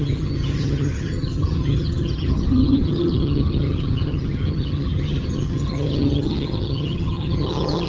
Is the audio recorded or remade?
remade